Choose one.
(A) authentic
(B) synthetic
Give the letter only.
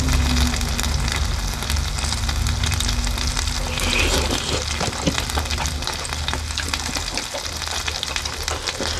A